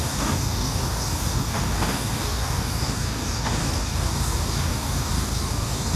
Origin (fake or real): fake